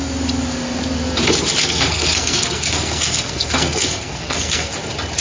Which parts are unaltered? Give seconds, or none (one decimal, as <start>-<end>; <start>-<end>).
0.0-1.6; 4.7-5.2